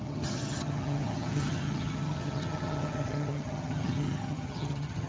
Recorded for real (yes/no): no